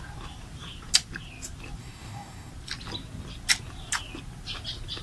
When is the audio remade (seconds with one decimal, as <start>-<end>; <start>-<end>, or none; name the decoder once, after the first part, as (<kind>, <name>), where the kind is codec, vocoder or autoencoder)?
1.8-2.5 (codec, DAC)